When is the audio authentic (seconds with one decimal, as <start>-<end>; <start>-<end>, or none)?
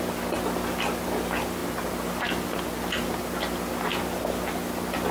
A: 0.0-5.1